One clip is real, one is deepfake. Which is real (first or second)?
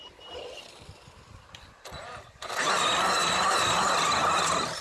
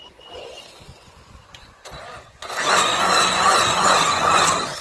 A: first